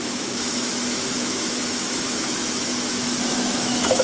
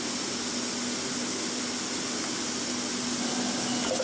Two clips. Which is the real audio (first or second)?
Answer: second